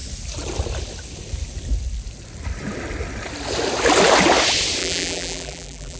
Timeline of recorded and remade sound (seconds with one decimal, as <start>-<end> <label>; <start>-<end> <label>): 0.0-4.8 recorded; 4.8-6.0 remade